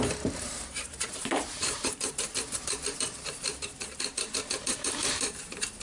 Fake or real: fake